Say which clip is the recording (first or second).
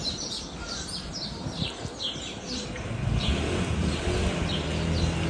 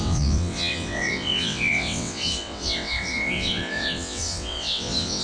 first